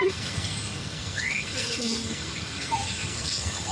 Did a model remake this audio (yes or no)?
yes